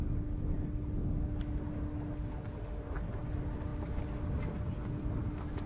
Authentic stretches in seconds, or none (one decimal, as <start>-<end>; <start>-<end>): 0.0-5.7